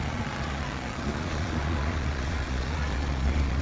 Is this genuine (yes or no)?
no